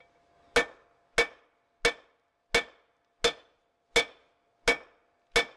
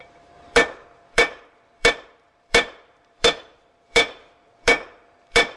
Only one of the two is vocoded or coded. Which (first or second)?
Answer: second